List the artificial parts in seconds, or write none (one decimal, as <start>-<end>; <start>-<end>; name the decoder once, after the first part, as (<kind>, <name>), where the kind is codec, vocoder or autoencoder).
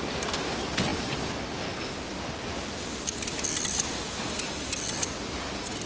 none